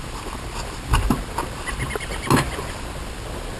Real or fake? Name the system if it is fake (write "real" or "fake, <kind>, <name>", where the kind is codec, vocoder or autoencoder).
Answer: real